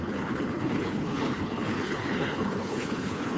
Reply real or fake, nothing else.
fake